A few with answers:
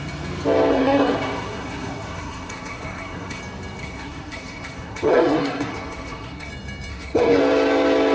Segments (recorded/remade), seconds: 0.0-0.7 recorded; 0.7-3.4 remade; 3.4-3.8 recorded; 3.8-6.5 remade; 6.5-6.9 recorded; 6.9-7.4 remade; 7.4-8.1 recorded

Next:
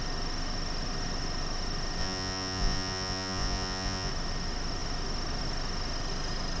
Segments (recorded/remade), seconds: 0.0-2.0 recorded; 2.0-4.1 remade; 4.1-6.6 recorded

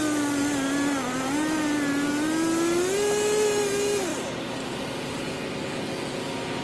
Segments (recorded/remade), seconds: 0.0-6.6 recorded

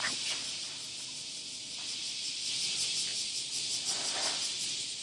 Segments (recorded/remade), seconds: 0.0-5.0 recorded

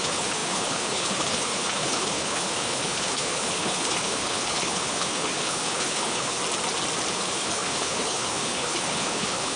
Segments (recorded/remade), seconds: 0.0-6.4 remade; 6.4-7.1 recorded; 7.1-9.6 remade

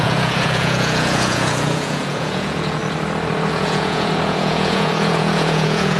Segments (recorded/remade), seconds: 0.0-2.8 remade; 2.8-3.5 recorded; 3.5-6.0 remade

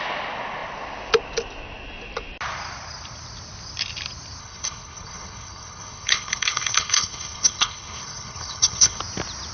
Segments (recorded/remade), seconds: 0.0-4.4 recorded; 4.4-9.0 remade; 9.0-9.5 recorded

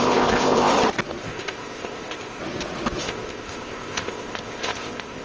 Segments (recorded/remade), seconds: 0.0-0.7 remade; 0.7-1.2 recorded; 1.2-2.4 remade; 2.4-3.0 recorded; 3.0-5.2 remade